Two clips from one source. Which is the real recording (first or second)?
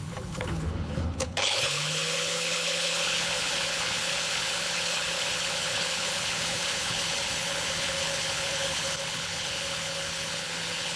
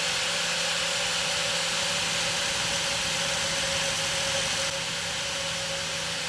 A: second